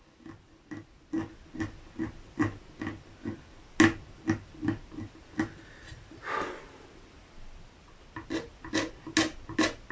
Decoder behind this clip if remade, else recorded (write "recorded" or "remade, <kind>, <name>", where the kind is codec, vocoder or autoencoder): recorded